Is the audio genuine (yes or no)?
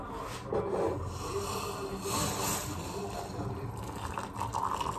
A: yes